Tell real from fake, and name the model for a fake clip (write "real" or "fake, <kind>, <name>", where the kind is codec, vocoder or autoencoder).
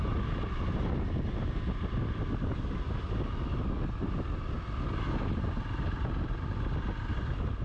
real